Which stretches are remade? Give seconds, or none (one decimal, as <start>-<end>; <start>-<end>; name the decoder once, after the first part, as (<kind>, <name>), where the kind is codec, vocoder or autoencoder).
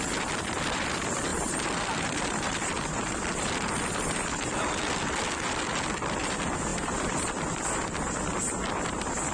1.3-4.8 (vocoder, BigVGAN v2)